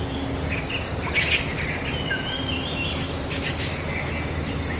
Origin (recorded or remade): recorded